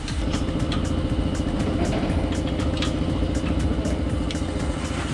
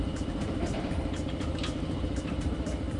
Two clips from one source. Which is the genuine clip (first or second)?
first